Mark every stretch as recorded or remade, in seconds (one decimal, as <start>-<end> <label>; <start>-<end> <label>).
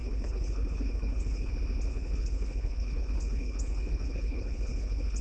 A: 0.0-1.5 remade; 1.5-1.9 recorded; 1.9-5.2 remade